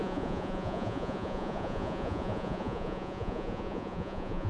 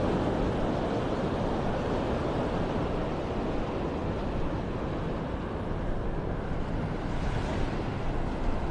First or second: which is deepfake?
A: first